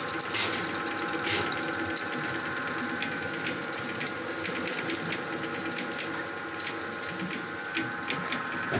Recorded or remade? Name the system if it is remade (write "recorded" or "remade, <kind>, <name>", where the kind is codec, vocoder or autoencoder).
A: recorded